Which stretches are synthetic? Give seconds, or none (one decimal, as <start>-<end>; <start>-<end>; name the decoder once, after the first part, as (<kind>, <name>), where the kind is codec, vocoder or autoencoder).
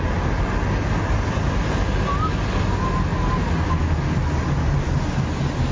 none